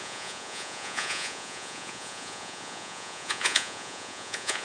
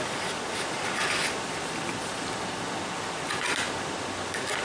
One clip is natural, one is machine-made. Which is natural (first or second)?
second